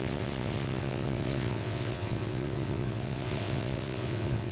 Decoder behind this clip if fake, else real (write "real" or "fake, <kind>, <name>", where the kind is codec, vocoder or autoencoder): fake, vocoder, WaveNeXt